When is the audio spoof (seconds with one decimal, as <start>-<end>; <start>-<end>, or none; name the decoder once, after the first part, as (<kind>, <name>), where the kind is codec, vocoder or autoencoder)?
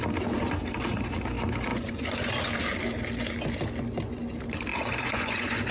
1.7-2.3 (vocoder, Vocos); 4.7-5.7